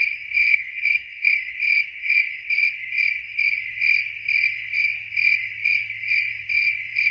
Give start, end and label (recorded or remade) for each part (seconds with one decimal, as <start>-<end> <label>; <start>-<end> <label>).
0.0-0.5 recorded; 0.5-1.3 remade; 1.3-7.1 recorded